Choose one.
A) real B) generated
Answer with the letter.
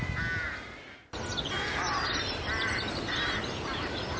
A